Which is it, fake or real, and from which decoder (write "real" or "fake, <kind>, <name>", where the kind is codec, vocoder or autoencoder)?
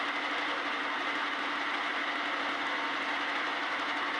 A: real